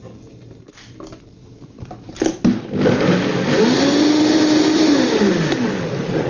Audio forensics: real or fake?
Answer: real